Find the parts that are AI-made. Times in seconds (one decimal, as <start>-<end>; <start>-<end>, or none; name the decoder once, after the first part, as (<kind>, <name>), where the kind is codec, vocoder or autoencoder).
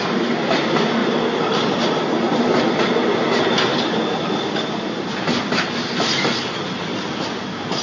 none